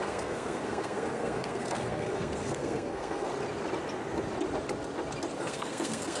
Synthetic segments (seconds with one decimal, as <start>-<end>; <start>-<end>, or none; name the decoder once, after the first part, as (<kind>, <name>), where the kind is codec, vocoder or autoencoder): 0.0-3.3 (codec, SNAC); 5.4-6.2